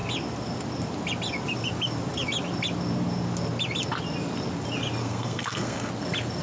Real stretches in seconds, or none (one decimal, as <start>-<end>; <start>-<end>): 0.0-5.0; 5.9-6.4